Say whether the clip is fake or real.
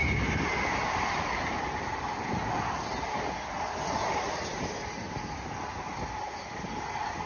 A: real